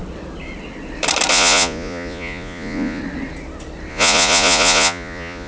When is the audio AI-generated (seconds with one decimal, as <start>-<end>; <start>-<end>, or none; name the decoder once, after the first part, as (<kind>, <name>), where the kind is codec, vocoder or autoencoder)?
1.3-3.0 (vocoder, Vocos); 3.9-5.5